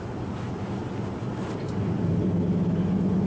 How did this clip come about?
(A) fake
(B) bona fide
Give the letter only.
B